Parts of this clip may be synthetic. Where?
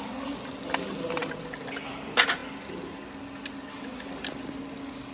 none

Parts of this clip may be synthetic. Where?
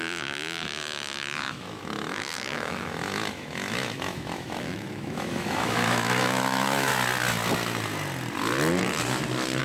0.0-6.9 (autoencoder, DAC-VAE)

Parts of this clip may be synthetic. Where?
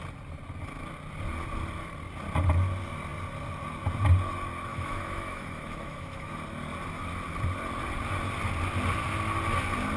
4.7-6.3 (autoencoder, DAC-VAE)